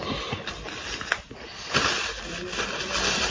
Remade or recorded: recorded